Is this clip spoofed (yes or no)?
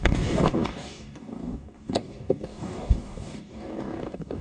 yes